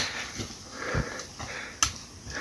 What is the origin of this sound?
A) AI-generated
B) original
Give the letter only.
B